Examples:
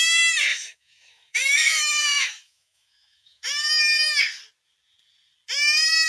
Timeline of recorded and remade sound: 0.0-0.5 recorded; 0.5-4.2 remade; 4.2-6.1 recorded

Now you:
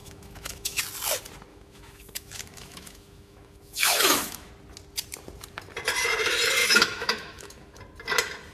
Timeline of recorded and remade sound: 0.0-0.8 remade; 0.8-1.5 recorded; 1.5-4.5 remade; 4.5-6.6 recorded; 6.6-7.8 remade; 7.8-8.5 recorded

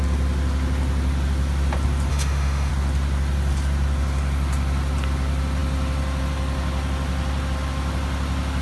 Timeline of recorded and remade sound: 0.0-2.1 recorded; 2.1-2.7 remade; 2.7-8.6 recorded

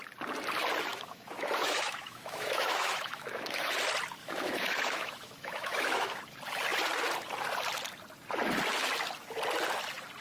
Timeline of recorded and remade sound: 0.0-0.9 recorded; 0.9-3.7 remade; 3.7-4.2 recorded; 4.2-6.2 remade; 6.2-10.2 recorded

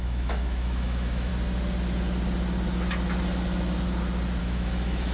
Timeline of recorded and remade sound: 0.0-1.3 remade; 1.3-4.4 recorded; 4.4-5.1 remade

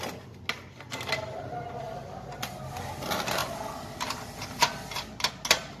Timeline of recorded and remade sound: 0.0-5.8 recorded